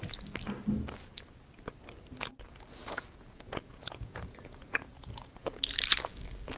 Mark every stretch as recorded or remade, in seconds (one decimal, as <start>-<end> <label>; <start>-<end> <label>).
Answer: 0.0-2.8 recorded; 2.8-5.6 remade; 5.6-6.6 recorded